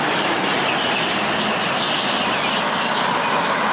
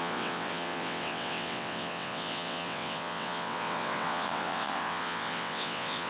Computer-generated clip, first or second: second